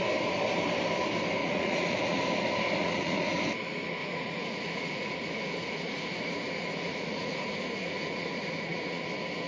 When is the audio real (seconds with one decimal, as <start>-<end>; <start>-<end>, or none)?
0.0-1.4; 2.2-2.8; 3.4-4.0; 9.0-9.5